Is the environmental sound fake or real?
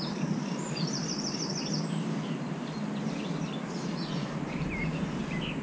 fake